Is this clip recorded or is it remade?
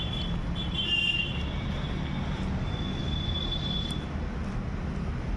recorded